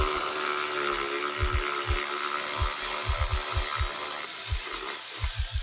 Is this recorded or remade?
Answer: recorded